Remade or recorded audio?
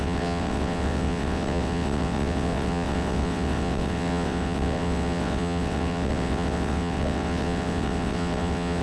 remade